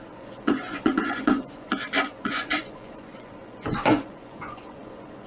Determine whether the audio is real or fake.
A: fake